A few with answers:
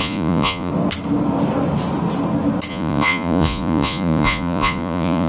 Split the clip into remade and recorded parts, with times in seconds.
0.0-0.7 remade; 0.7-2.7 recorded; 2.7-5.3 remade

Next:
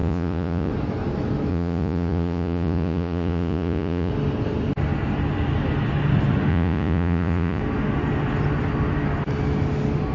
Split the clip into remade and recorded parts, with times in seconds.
0.0-0.7 remade; 0.7-1.5 recorded; 1.5-4.1 remade; 4.1-6.5 recorded; 6.5-7.6 remade; 7.6-10.1 recorded

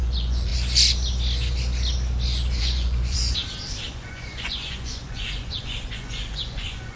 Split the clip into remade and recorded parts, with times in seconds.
0.0-0.5 remade; 0.5-2.6 recorded; 2.6-3.4 remade; 3.4-3.9 recorded; 3.9-7.0 remade

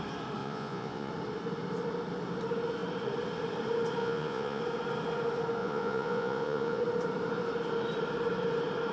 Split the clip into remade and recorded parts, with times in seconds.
0.0-0.4 recorded; 0.4-1.1 remade; 1.1-4.0 recorded; 4.0-4.6 remade; 4.6-5.6 recorded; 5.6-6.8 remade; 6.8-8.9 recorded

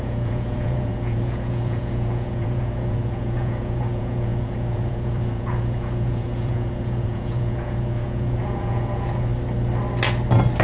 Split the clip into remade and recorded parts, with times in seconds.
0.0-9.3 remade; 9.3-10.6 recorded

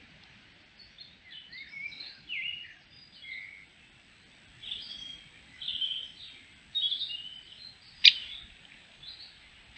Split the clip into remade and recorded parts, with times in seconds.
0.0-9.8 recorded